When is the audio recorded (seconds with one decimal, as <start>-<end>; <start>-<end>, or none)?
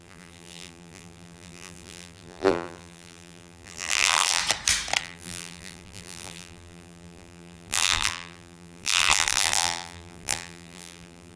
4.4-5.0